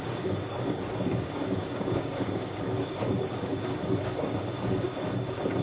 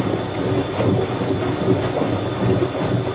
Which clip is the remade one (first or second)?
first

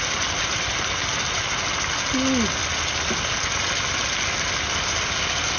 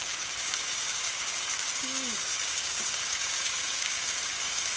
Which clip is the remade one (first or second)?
second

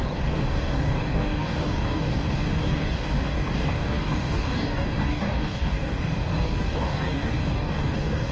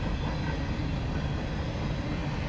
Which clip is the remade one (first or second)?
first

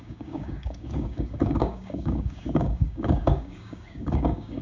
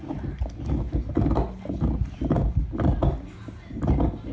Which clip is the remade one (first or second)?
first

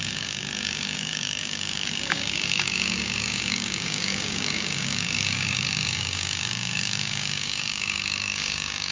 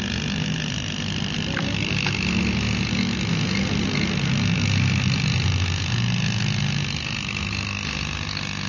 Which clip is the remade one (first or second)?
first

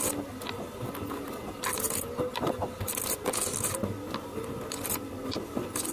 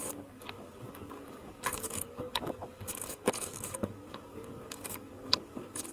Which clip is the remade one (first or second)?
second